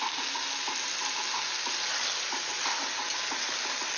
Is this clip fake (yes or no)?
no